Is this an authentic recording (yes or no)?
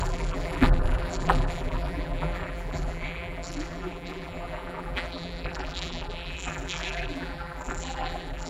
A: no